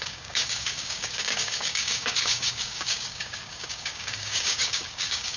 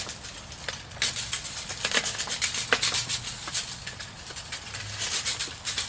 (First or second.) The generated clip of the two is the first